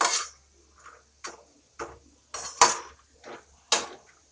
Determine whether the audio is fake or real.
real